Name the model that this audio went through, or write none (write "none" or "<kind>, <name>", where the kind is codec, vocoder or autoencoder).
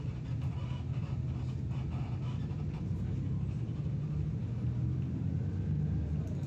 none